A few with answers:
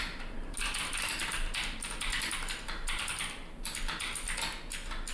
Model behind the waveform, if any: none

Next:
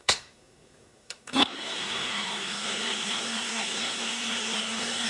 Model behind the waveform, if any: codec, SNAC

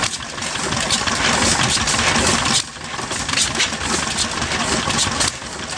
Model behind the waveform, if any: none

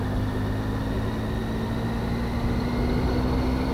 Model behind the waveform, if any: none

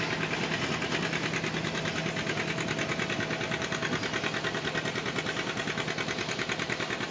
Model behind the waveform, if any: none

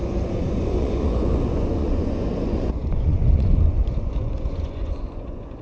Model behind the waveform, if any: vocoder, Vocos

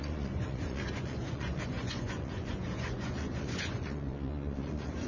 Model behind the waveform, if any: vocoder, Vocos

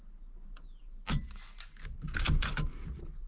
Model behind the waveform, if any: none